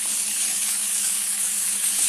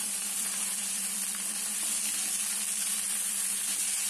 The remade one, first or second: first